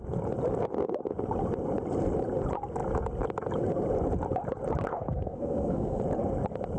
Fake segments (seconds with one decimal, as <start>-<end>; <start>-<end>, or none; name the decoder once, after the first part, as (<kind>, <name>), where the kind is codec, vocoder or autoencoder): 4.9-6.0 (codec, SNAC)